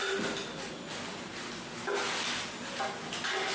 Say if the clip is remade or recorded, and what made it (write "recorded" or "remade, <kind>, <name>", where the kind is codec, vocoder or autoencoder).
recorded